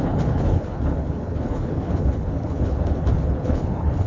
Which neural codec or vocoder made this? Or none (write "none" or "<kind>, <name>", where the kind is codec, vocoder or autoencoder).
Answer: codec, HILCodec